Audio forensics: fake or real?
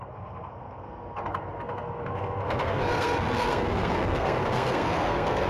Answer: fake